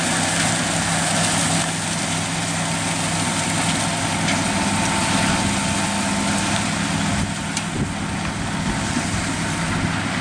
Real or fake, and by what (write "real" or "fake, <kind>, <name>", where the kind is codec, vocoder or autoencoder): real